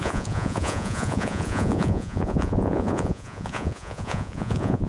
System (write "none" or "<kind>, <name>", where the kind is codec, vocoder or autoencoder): vocoder, Vocos